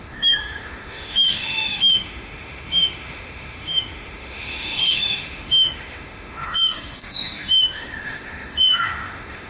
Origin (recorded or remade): remade